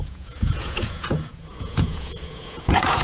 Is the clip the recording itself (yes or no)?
no